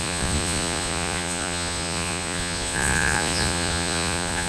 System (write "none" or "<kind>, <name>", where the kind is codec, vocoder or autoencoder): vocoder, Vocos